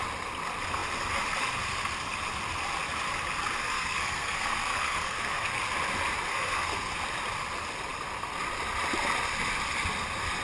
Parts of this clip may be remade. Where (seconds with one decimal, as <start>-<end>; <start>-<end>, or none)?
3.6-5.6; 6.3-6.9